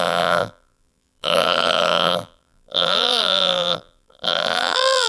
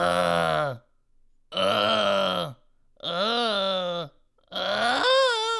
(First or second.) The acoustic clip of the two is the second